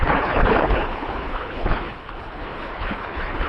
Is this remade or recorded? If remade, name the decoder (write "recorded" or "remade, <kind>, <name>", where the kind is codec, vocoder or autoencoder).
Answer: remade, codec, HILCodec